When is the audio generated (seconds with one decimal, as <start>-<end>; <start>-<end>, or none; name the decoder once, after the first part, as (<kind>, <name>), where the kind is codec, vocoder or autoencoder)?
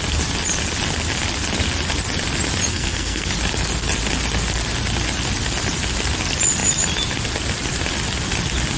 2.7-3.3 (codec, SNAC)